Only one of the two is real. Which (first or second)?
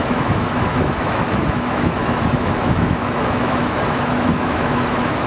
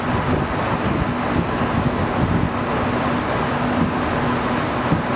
second